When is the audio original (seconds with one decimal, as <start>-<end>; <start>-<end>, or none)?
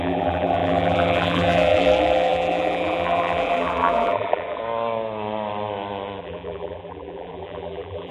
4.6-6.2